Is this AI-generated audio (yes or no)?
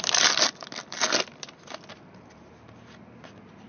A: no